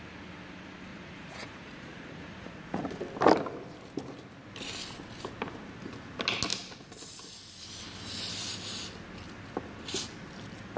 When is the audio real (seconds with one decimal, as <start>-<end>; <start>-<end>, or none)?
0.0-0.9; 2.9-10.8